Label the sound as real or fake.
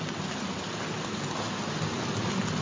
real